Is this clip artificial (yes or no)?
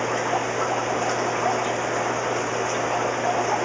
no